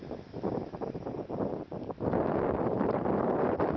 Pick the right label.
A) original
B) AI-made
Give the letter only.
A